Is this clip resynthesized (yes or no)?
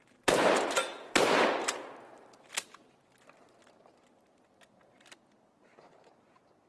no